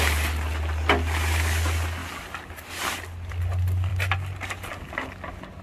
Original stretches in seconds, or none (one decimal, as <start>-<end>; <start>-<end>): 0.0-5.6